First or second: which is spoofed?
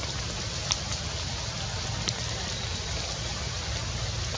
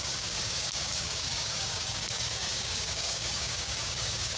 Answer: second